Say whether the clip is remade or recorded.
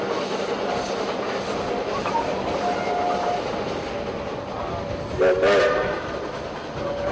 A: recorded